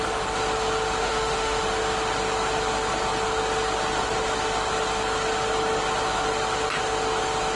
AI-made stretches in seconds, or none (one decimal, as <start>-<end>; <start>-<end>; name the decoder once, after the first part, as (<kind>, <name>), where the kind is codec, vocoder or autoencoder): 1.0-1.6 (autoencoder, DAC-VAE)